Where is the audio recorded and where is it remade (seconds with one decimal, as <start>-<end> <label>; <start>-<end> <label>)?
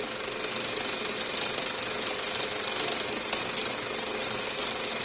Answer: 0.0-5.0 recorded